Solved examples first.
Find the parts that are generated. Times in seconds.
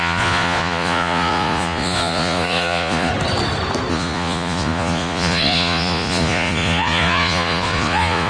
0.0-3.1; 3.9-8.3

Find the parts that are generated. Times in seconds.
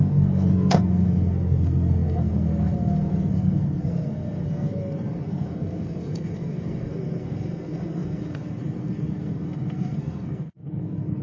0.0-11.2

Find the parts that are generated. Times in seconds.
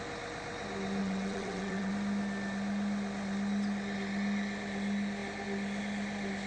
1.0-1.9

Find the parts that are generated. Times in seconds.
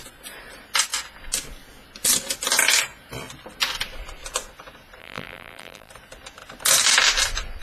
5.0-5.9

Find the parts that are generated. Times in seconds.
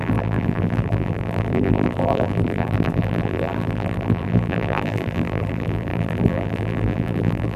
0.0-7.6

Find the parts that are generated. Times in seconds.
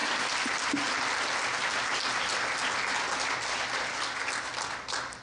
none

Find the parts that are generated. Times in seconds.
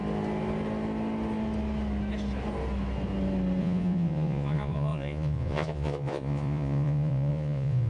3.6-7.9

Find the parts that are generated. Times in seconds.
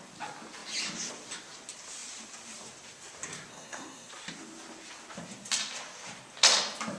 3.5-4.1